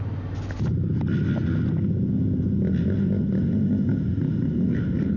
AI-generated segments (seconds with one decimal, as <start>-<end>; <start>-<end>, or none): 3.9-5.2